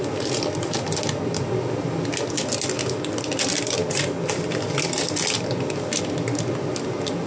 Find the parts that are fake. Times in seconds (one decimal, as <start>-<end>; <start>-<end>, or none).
none